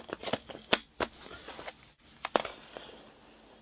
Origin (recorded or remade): recorded